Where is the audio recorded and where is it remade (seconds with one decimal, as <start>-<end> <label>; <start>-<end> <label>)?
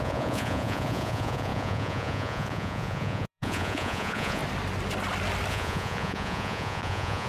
0.0-4.4 remade; 4.4-5.5 recorded; 5.5-7.3 remade